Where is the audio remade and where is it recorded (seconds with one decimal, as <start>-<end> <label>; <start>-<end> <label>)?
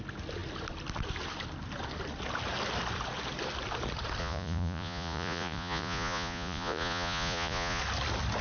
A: 0.0-4.2 recorded; 4.2-7.8 remade; 7.8-8.4 recorded